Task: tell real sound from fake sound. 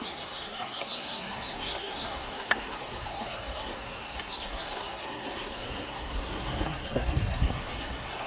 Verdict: fake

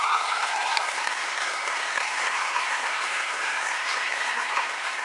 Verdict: fake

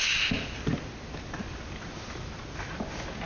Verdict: real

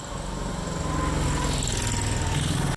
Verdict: real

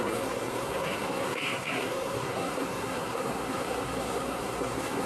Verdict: fake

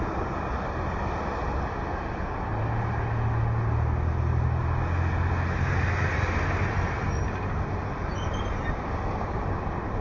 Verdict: real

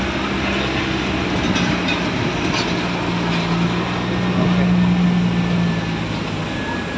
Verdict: real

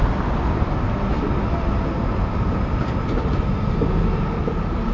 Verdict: real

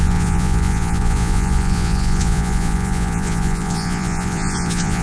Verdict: fake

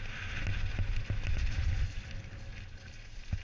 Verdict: real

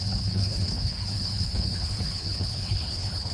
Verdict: fake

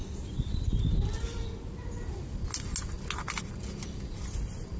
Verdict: real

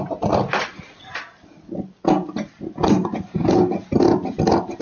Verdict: real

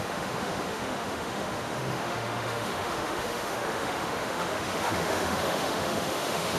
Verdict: fake